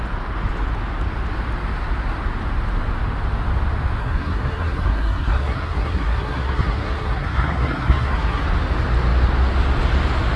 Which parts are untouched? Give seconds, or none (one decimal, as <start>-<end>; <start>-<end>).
0.0-4.0; 8.4-10.4